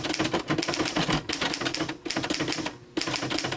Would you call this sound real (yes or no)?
yes